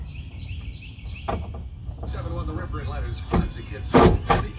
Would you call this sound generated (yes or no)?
no